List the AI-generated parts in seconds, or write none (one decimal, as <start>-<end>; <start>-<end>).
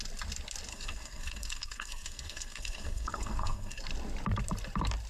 0.7-3.8